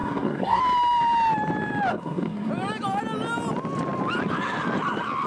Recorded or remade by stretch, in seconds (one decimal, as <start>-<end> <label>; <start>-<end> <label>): 0.0-0.6 remade; 0.6-1.9 recorded; 1.9-2.5 remade; 2.5-5.3 recorded